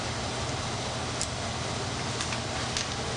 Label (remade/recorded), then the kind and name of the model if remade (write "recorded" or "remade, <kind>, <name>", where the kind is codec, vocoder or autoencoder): recorded